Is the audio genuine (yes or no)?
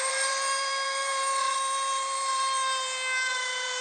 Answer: no